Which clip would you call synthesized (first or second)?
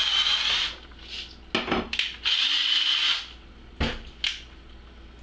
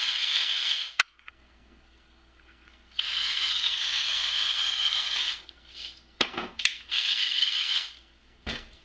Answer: second